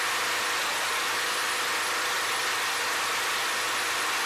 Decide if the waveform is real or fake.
real